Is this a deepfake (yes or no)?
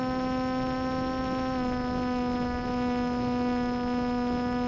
no